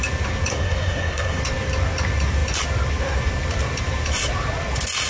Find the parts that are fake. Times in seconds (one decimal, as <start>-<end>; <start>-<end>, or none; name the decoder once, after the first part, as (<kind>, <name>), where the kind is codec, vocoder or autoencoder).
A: 0.5-1.4 (codec, SNAC)